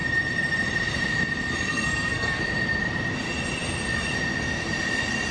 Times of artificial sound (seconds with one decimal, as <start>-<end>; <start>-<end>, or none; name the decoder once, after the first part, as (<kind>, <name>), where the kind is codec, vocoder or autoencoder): 1.7-2.4 (codec, SNAC)